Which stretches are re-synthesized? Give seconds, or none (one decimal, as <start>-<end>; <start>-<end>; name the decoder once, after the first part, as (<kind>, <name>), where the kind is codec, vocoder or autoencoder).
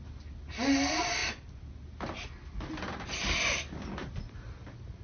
none